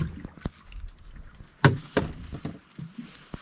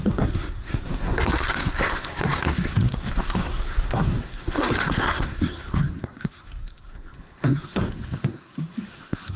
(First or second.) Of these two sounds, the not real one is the second